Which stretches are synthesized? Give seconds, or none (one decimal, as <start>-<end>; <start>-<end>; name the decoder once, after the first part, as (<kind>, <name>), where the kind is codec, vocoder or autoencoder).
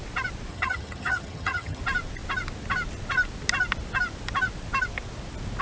0.5-1.8 (vocoder, HiFi-GAN)